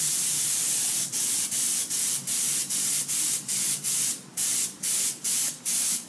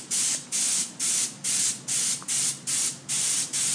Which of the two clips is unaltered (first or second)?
second